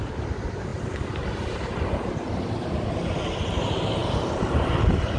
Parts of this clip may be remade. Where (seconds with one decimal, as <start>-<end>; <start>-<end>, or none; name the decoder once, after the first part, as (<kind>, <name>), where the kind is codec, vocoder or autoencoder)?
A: none